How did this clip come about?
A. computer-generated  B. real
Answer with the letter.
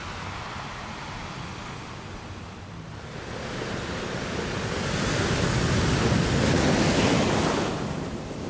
B